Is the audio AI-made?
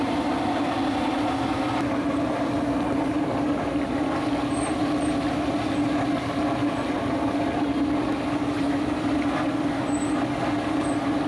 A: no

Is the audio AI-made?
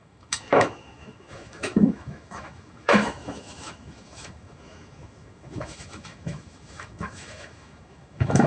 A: yes